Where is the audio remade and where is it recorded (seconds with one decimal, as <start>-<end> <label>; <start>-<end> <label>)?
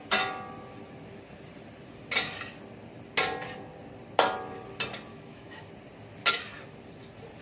0.0-5.1 recorded; 5.1-5.7 remade; 5.7-7.4 recorded